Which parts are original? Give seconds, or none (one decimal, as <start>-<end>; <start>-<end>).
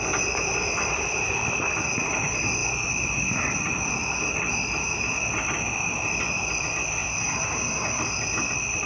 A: 2.6-3.4; 4.0-5.3; 7.0-7.9